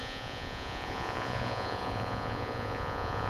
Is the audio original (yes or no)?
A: no